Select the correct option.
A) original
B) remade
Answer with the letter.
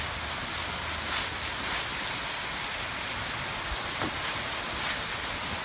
A